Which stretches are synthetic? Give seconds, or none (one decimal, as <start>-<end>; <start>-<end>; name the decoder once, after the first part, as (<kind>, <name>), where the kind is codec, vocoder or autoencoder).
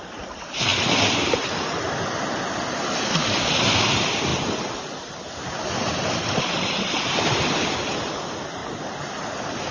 0.0-8.6 (vocoder, BigVGAN v2); 9.1-9.7